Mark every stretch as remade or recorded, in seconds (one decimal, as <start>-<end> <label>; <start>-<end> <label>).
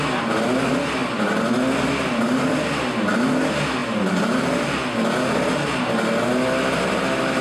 0.0-7.4 recorded